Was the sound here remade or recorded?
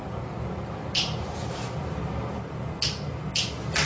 recorded